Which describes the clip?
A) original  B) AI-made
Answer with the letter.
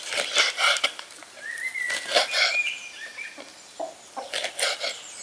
A